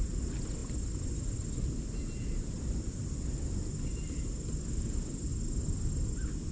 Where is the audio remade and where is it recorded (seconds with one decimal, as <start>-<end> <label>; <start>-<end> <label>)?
0.0-6.5 recorded